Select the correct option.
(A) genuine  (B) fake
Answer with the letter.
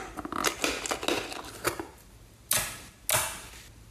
A